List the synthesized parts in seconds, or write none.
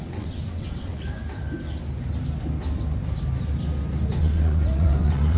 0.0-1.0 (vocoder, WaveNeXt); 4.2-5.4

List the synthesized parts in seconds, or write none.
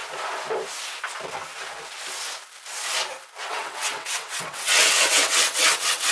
3.5-6.1 (vocoder, WaveNeXt)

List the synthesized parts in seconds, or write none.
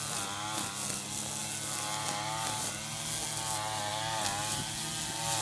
none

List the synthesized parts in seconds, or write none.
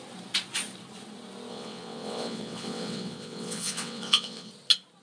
1.5-4.5 (vocoder, WaveNeXt)